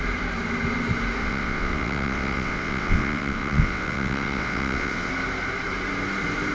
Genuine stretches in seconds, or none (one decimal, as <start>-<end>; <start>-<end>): 0.0-1.2; 5.1-6.5